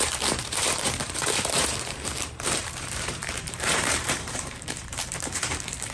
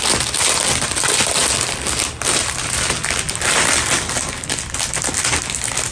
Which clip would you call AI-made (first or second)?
first